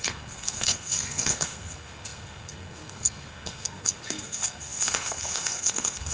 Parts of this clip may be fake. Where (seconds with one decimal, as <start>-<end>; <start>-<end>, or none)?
0.0-6.1